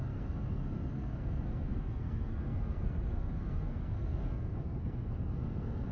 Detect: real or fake fake